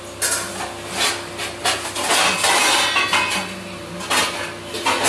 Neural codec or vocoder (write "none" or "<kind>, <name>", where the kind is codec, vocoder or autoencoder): none